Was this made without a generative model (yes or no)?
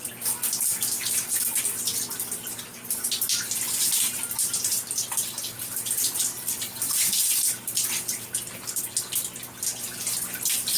yes